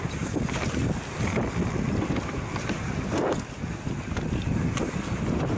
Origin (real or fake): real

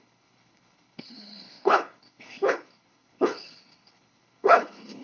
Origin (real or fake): fake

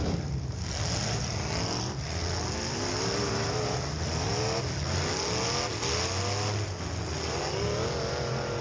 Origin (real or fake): real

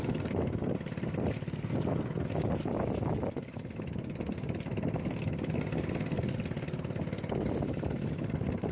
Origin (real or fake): real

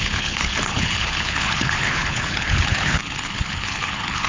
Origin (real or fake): fake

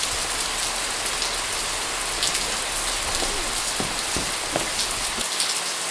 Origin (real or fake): real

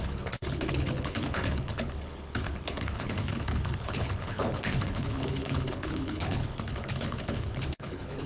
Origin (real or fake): fake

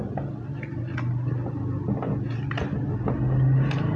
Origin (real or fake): real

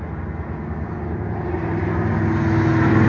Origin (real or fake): real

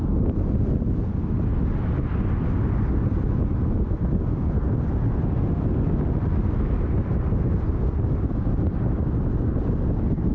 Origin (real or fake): real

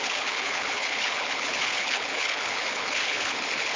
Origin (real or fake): fake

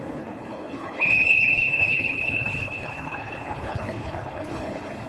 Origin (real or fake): fake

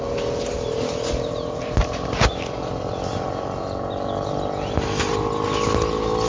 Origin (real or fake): real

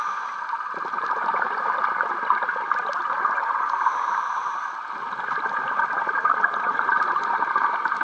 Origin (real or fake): real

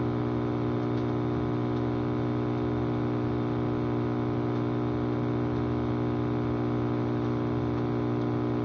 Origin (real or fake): real